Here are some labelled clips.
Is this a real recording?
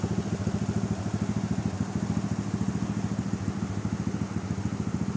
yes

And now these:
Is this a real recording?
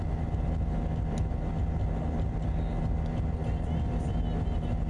yes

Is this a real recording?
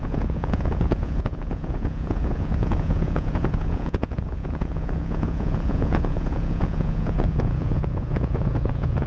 no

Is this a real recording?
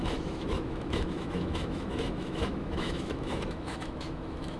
no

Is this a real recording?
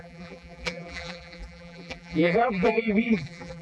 no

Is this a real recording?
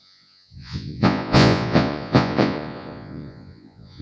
no